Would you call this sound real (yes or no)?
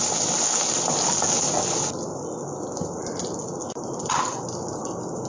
yes